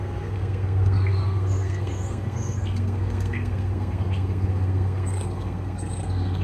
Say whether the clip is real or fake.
fake